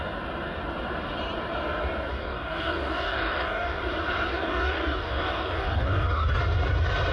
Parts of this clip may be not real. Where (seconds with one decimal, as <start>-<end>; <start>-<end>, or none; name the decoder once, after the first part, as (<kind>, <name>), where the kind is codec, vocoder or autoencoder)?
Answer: 2.1-3.8 (codec, DAC); 4.3-6.4